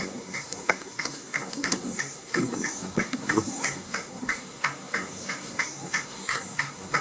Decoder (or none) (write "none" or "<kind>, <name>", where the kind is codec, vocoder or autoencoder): codec, SNAC